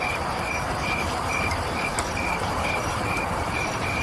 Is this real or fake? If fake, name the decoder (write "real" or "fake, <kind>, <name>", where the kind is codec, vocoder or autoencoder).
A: fake, vocoder, BigVGAN v2